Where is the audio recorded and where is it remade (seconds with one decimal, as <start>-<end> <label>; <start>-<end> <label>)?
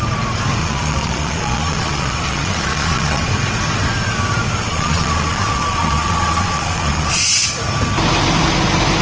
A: 0.0-0.6 recorded; 0.6-3.2 remade; 3.2-4.7 recorded; 4.7-7.2 remade; 7.2-9.0 recorded